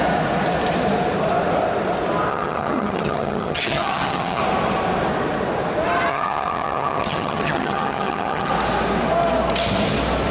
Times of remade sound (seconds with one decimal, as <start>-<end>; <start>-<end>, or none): 2.3-4.4; 6.1-8.5